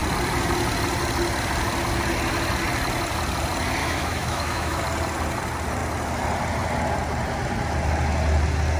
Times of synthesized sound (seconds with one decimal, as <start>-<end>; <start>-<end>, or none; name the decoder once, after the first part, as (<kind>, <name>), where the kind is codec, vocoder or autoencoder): 3.8-4.8 (autoencoder, DAC-VAE)